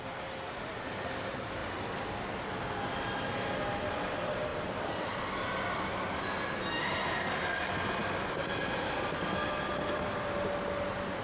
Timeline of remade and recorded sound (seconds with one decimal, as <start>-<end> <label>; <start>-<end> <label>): 0.0-11.2 recorded